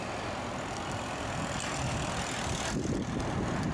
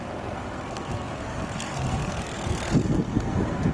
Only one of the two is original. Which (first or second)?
first